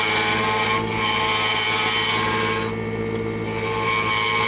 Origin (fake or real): real